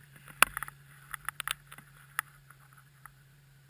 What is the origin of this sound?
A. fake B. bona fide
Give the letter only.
B